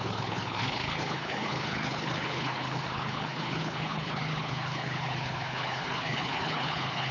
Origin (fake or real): fake